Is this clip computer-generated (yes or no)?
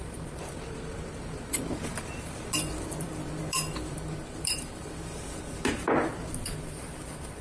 yes